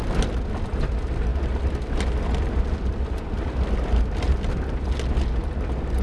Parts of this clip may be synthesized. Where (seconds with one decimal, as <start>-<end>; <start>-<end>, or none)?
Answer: none